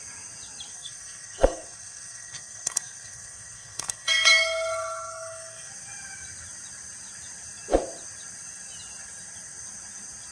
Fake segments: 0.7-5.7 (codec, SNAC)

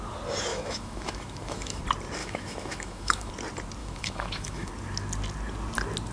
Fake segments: 0.5-1.8 (autoencoder, DAC-VAE); 2.2-3.3; 3.8-4.7

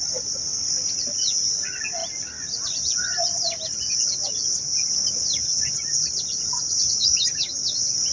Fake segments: none

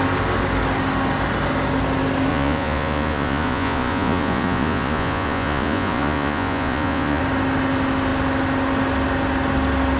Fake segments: 2.3-7.2 (vocoder, Vocos)

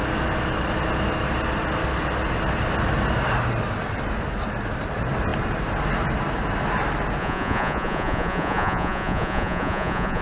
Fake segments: 7.2-10.2 (vocoder, Vocos)

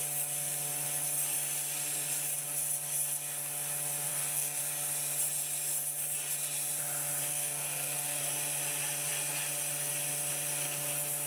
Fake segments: 4.1-4.6 (codec, SNAC); 7.3-8.2

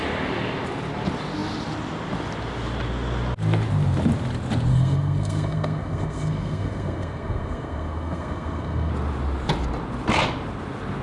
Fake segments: 4.7-8.9 (codec, SNAC)

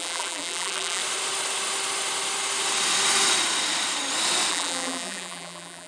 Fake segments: 0.0-1.0 (vocoder, BigVGAN v2); 4.5-5.9